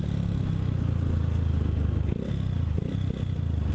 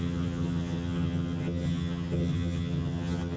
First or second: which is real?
first